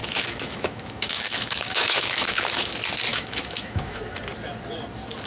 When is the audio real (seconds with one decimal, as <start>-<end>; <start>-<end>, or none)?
2.7-3.1; 4.0-5.3